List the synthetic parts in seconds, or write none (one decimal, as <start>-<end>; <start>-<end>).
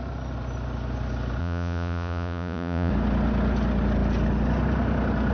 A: 1.4-2.9